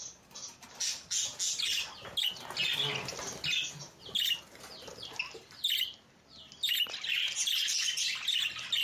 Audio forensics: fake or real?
real